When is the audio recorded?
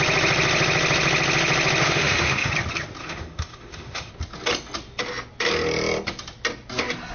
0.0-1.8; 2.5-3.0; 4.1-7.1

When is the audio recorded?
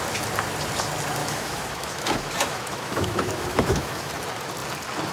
0.0-1.2; 4.1-5.1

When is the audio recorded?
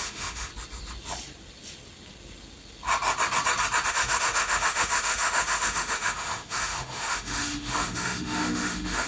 0.5-3.9